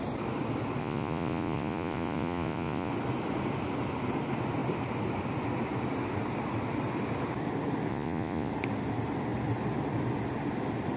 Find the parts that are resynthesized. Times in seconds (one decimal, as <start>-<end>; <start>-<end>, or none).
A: 0.8-2.9; 7.9-8.5